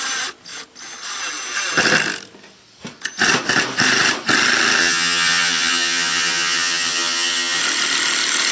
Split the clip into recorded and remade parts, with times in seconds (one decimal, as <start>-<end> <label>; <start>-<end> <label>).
0.0-4.8 recorded; 4.8-7.6 remade; 7.6-8.5 recorded